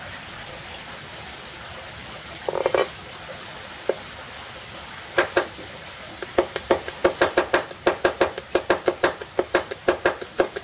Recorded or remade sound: recorded